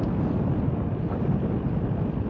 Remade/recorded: recorded